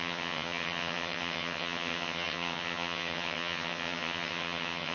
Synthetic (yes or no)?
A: yes